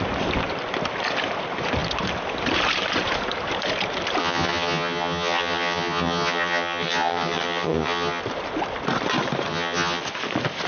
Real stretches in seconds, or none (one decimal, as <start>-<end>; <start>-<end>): 0.0-4.2; 8.2-9.5; 10.0-10.7